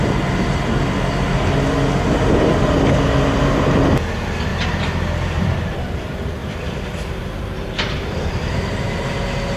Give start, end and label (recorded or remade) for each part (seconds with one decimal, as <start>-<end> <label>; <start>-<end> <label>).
0.0-4.5 recorded; 4.5-5.9 remade; 5.9-6.4 recorded; 6.4-9.1 remade; 9.1-9.6 recorded